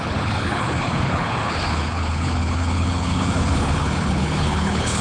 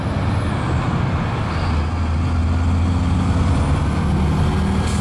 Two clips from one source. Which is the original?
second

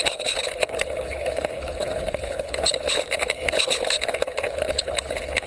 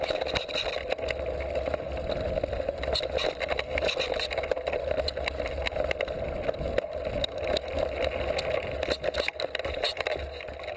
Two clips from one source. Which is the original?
second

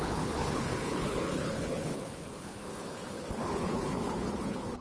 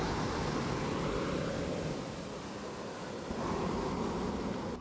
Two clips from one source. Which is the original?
second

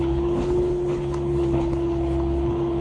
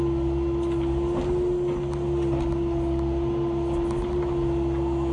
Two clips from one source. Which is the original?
second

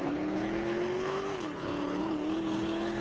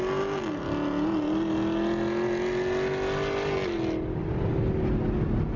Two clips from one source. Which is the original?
second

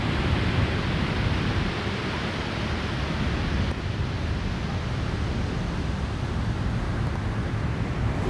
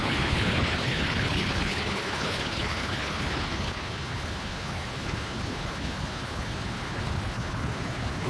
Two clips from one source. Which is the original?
first